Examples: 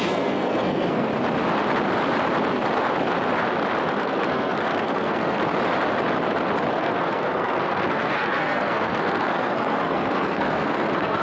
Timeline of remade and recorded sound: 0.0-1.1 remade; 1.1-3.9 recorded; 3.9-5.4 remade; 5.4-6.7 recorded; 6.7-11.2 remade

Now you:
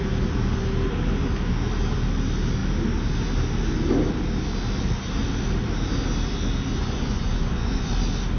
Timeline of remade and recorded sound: 0.0-6.8 recorded; 6.8-7.9 remade; 7.9-8.4 recorded

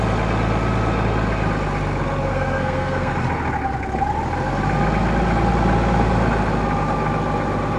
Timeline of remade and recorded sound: 0.0-2.3 recorded; 2.3-3.1 remade; 3.1-7.8 recorded

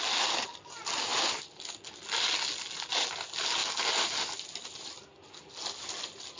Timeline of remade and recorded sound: 0.0-6.4 recorded

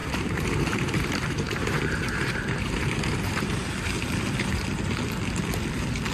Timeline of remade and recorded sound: 0.0-3.7 remade; 3.7-6.1 recorded

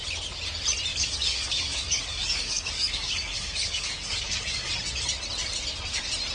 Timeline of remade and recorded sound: 0.0-0.9 recorded; 0.9-4.7 remade; 4.7-6.3 recorded

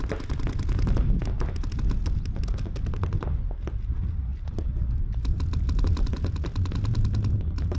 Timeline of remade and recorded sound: 0.0-7.8 recorded

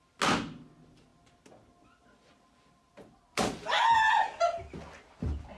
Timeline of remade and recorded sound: 0.0-5.6 recorded